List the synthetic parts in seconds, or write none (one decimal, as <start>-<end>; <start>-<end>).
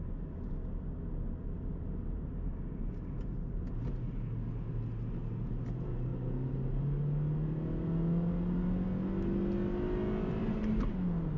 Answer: 6.1-6.8; 10.4-10.9